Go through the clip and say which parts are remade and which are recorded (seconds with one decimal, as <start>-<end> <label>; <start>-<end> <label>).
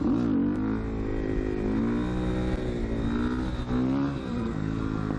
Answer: 0.0-4.2 recorded; 4.2-4.8 remade; 4.8-5.2 recorded